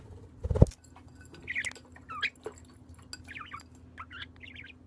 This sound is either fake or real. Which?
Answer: real